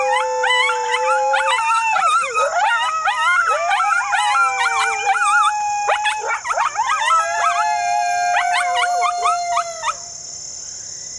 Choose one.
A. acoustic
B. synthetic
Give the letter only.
A